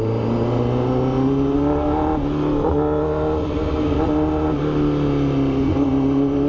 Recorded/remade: recorded